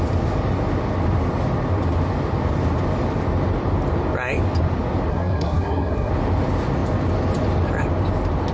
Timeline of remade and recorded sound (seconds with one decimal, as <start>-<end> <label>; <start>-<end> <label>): 0.0-5.1 recorded; 5.1-6.1 remade; 6.1-8.5 recorded